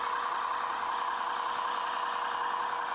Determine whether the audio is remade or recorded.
recorded